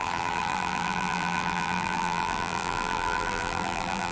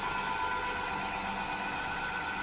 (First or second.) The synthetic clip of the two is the first